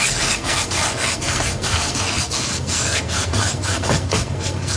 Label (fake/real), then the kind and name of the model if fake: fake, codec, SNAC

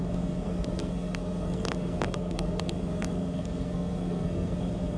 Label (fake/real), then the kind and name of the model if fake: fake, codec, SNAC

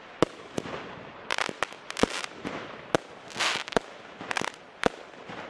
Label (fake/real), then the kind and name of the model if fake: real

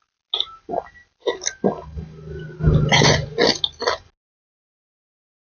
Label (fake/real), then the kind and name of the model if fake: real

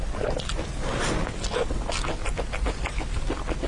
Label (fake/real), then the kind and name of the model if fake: real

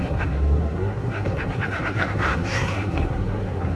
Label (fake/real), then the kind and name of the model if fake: fake, codec, SNAC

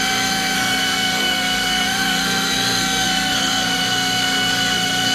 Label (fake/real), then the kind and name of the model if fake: fake, codec, SNAC